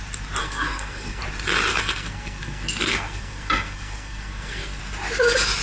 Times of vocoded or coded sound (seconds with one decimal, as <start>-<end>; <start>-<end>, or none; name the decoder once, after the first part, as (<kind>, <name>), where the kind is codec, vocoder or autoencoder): 0.4-1.2 (codec, SNAC); 1.7-4.8